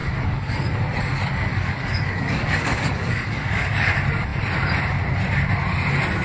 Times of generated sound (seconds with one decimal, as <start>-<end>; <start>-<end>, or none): 0.0-0.8; 1.5-3.9